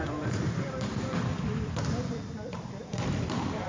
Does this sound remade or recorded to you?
remade